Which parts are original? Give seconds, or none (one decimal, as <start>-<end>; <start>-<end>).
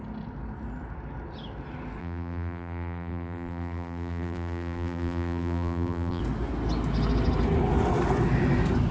0.0-2.0; 6.2-8.9